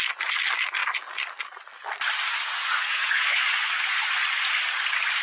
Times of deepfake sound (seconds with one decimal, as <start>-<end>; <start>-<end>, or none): 2.3-4.3

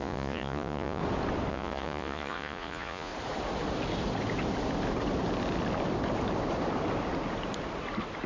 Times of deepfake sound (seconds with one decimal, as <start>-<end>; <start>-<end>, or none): 0.0-1.0; 1.5-3.1

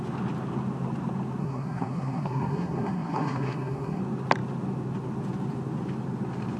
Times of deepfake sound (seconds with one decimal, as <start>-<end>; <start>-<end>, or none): 1.4-4.0

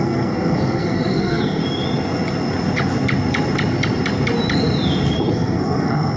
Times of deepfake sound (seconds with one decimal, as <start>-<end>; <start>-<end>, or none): 0.0-1.6; 5.3-6.2

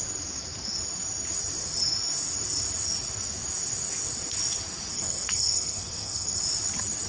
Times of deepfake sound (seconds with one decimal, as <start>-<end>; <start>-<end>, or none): 4.9-6.4